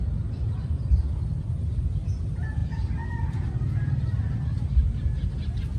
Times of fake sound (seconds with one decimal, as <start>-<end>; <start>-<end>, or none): none